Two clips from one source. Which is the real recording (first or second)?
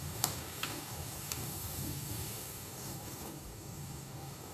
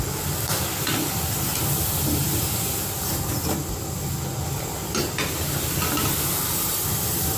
second